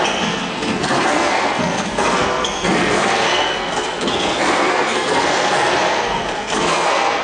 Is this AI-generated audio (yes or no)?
yes